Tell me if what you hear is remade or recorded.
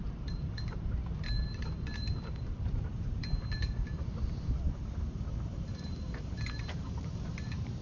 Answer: remade